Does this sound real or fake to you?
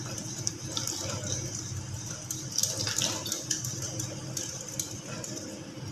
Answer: real